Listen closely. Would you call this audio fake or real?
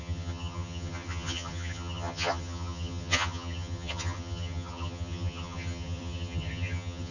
fake